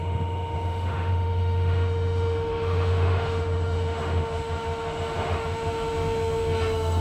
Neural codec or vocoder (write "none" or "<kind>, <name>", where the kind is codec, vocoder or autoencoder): autoencoder, DAC-VAE